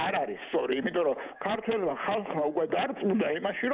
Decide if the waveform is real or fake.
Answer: fake